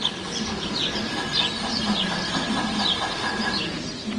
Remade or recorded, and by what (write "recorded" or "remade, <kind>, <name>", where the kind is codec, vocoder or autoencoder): recorded